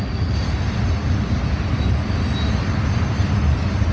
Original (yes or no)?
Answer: yes